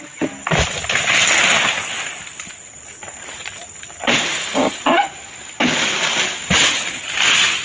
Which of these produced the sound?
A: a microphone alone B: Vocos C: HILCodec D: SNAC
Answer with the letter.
A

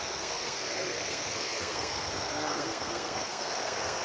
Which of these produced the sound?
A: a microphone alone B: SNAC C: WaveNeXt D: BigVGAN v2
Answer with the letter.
B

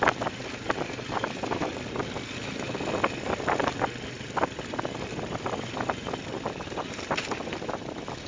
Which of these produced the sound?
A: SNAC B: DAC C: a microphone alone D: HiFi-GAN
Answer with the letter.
C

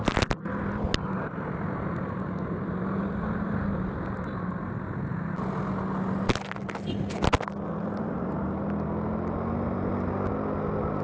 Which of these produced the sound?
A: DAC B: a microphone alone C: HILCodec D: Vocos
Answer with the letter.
B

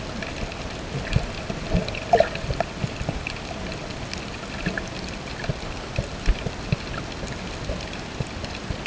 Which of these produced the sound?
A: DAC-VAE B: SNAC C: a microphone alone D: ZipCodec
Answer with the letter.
C